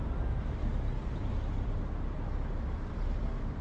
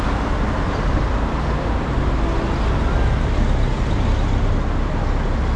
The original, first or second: second